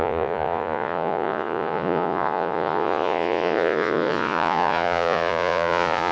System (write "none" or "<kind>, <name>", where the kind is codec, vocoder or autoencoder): vocoder, Vocos